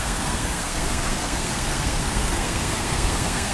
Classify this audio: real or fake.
fake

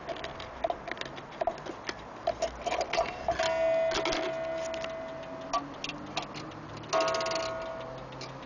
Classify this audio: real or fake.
real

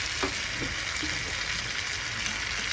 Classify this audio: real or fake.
real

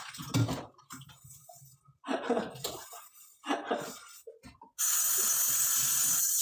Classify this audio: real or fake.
real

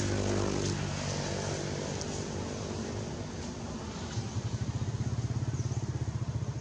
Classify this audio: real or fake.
real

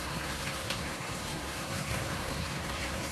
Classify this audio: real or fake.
fake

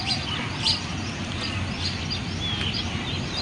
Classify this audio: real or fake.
real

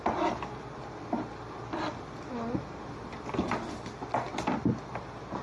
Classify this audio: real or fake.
real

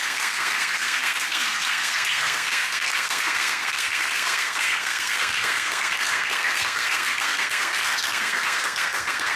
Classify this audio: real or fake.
fake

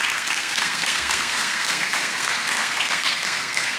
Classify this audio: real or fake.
fake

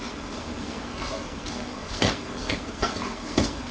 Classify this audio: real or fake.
fake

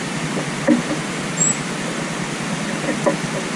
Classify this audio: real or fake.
real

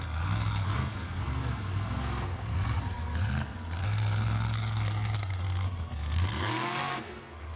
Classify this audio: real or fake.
fake